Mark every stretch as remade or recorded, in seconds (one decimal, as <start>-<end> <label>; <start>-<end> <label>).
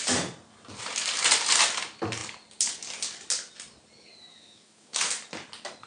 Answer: 0.0-4.3 recorded; 4.3-5.1 remade; 5.1-5.9 recorded